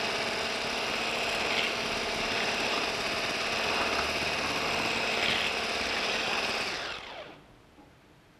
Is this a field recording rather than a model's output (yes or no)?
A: yes